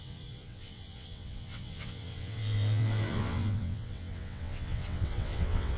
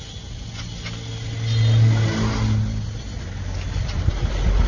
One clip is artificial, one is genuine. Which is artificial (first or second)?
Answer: first